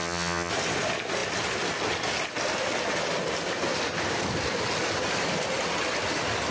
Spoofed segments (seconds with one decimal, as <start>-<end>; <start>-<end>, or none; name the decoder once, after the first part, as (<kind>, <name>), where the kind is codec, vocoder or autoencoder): 0.0-0.5 (vocoder, HiFi-GAN)